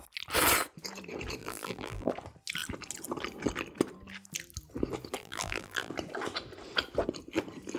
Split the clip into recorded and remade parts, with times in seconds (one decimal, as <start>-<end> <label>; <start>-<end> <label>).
0.0-1.4 recorded; 1.4-2.1 remade; 2.1-5.2 recorded; 5.2-5.9 remade; 5.9-7.8 recorded